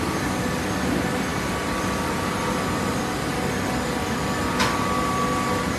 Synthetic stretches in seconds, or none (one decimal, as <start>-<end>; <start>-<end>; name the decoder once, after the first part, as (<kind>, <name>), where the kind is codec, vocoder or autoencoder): none